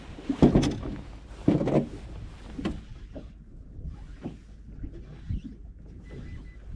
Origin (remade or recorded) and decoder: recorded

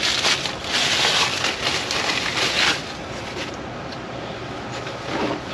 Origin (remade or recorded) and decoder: recorded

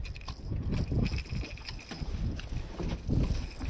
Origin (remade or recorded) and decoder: recorded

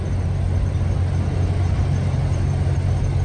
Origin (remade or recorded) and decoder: recorded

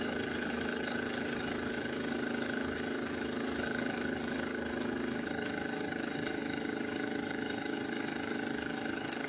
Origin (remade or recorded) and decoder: remade, codec, DAC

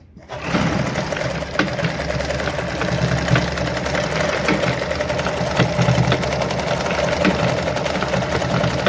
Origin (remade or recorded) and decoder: recorded